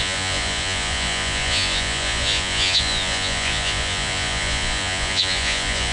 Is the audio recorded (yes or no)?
no